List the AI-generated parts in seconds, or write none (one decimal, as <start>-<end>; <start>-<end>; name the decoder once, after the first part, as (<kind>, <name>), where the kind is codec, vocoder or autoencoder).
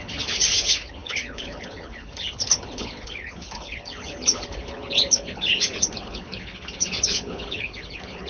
0.0-8.3 (codec, HILCodec)